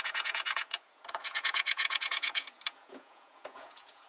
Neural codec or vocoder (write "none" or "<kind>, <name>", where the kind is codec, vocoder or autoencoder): vocoder, Vocos